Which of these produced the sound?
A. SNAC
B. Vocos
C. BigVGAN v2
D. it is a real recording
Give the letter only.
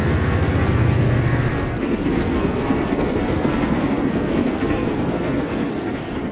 A